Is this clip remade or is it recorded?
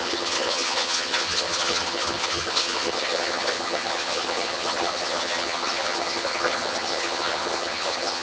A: remade